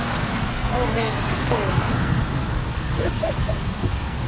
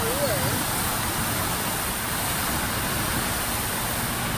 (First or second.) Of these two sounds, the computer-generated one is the first